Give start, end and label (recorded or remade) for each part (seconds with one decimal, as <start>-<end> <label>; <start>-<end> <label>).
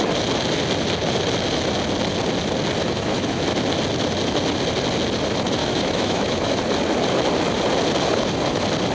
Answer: 0.0-2.8 recorded; 2.8-3.4 remade; 3.4-5.6 recorded; 5.6-6.6 remade; 6.6-8.9 recorded